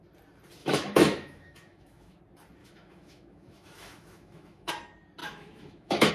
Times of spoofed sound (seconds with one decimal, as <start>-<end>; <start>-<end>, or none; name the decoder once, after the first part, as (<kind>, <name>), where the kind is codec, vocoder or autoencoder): 0.6-2.2 (autoencoder, DAC-VAE); 2.6-4.7; 5.2-6.1